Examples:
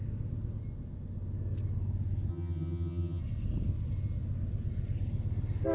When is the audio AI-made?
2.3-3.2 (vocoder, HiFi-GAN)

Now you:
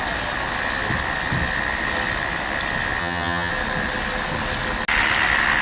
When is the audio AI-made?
3.0-3.5 (vocoder, HiFi-GAN)